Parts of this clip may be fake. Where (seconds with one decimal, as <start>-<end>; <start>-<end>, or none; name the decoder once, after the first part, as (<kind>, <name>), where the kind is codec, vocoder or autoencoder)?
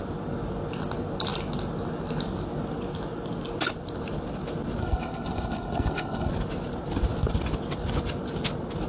4.8-6.3 (codec, SNAC)